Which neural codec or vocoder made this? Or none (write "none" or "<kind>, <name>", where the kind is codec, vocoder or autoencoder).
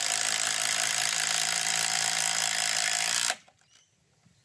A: none